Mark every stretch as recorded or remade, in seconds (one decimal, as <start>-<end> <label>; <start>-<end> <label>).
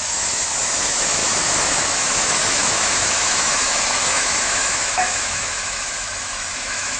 0.0-7.0 remade